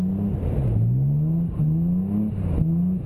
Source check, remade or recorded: recorded